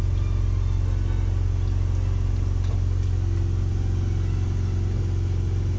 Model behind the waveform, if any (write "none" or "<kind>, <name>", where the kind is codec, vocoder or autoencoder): none